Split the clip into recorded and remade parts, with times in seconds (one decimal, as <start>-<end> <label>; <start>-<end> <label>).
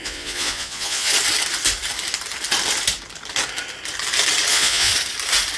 0.0-1.1 remade; 1.1-4.5 recorded; 4.5-4.9 remade; 4.9-5.6 recorded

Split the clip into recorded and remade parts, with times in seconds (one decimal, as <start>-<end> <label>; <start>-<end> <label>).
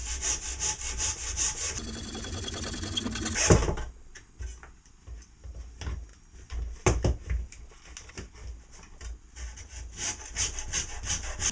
0.0-11.5 recorded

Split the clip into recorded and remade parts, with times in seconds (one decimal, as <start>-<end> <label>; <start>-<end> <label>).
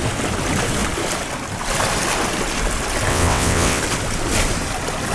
0.0-3.1 recorded; 3.1-3.8 remade; 3.8-5.1 recorded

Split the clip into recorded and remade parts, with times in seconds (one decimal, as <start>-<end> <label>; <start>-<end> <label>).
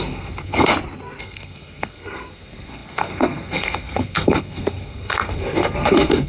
0.0-0.7 remade; 0.7-1.2 recorded; 1.2-6.3 remade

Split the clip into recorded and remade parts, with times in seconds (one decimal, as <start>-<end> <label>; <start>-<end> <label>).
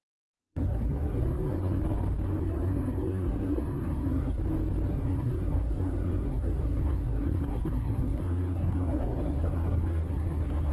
0.0-1.8 remade; 1.8-2.4 recorded; 2.4-4.4 remade; 4.4-4.9 recorded; 4.9-10.7 remade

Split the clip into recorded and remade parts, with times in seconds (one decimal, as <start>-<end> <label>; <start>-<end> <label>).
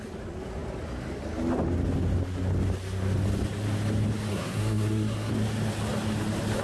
0.0-4.3 recorded; 4.3-5.3 remade; 5.3-6.6 recorded